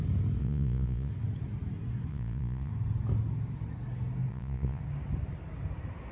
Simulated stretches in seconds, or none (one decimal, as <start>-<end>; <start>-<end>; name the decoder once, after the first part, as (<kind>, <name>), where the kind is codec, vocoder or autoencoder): 0.4-1.1 (vocoder, Vocos); 2.1-2.7; 4.3-4.8